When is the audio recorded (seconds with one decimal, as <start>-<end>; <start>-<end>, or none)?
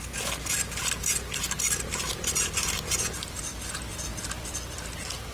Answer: 0.0-1.9; 3.4-5.3